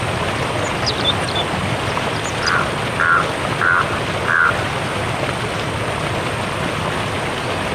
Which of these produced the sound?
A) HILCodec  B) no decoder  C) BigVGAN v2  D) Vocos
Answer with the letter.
B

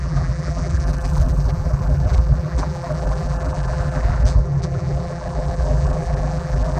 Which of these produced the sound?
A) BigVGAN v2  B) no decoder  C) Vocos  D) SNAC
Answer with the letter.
A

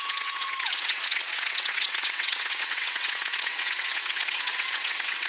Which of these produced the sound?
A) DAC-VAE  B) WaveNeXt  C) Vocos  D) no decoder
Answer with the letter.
B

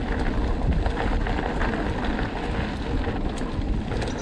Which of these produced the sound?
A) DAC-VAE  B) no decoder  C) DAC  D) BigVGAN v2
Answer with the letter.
B